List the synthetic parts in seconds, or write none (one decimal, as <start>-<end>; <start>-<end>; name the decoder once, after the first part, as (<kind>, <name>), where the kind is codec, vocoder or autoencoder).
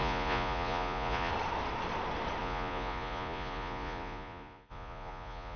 0.0-1.3 (vocoder, Vocos); 2.4-5.6